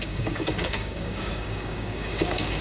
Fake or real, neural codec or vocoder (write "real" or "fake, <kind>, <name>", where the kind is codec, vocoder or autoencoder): fake, codec, DAC